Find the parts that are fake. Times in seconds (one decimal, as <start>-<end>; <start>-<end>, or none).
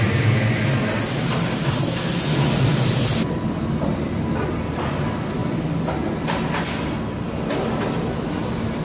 none